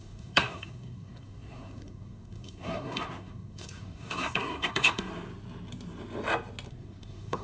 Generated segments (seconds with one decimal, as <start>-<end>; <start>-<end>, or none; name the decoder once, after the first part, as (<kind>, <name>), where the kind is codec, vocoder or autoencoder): 0.0-5.1 (codec, SNAC); 6.7-7.4